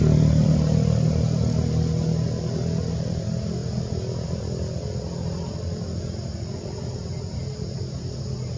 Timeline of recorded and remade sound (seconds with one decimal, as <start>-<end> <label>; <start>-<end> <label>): 0.0-8.6 recorded